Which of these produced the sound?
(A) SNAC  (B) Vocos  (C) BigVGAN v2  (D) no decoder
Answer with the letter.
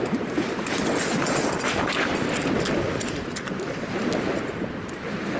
D